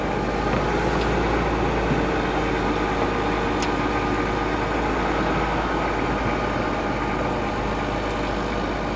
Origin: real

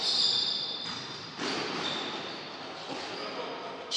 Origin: fake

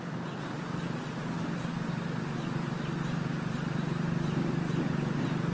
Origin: real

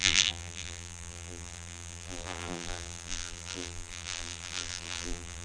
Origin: fake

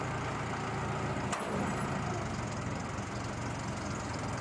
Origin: real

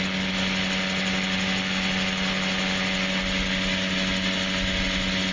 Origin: real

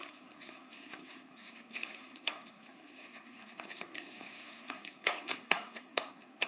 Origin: fake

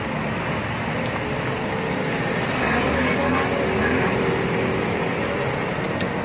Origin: real